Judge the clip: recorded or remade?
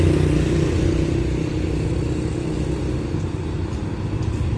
recorded